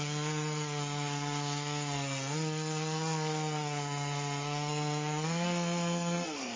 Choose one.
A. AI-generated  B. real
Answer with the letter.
A